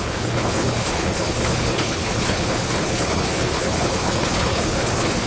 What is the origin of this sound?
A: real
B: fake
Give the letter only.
B